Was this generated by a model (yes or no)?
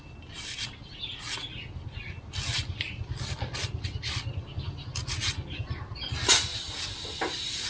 no